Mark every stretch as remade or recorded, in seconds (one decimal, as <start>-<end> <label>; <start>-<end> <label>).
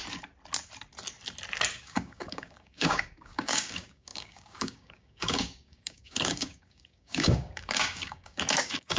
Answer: 0.0-1.7 recorded; 1.7-9.0 remade